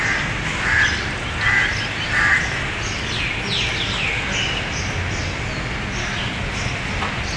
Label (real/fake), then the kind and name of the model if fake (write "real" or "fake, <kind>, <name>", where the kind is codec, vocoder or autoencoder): real